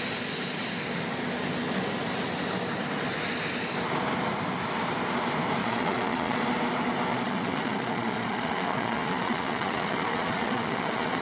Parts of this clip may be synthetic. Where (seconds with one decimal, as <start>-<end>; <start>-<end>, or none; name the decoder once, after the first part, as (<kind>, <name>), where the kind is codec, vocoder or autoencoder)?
5.6-6.4 (vocoder, Vocos); 7.1-11.2